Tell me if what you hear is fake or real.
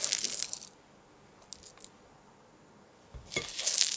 real